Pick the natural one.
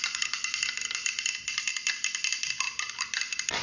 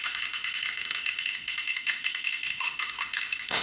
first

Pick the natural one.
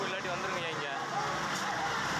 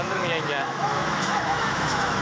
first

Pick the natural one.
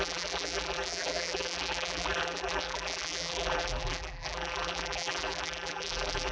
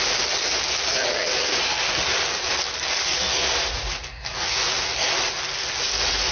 second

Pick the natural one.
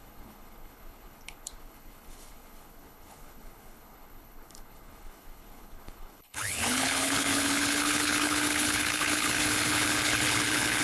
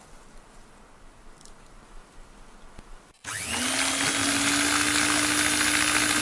second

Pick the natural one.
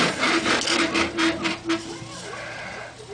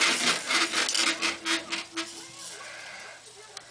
second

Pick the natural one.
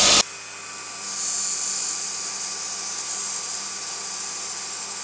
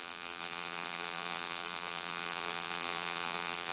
first